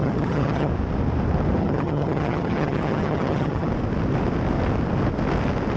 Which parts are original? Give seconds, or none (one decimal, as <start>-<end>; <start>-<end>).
0.7-1.6; 3.7-5.8